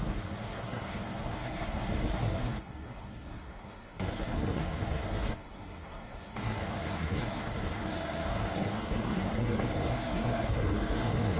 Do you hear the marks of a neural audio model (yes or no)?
yes